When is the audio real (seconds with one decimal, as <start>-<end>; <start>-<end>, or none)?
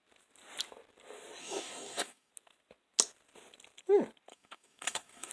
0.0-1.4; 2.3-4.3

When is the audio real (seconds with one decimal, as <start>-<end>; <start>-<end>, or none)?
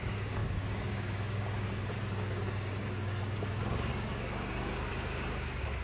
none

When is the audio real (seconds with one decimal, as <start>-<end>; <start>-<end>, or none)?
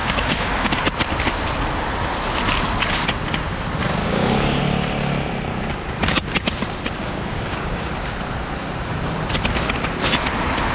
0.7-4.0; 4.6-7.0; 7.9-10.7